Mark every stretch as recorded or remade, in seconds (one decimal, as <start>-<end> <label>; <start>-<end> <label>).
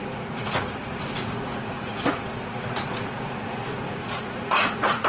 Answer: 0.0-5.1 remade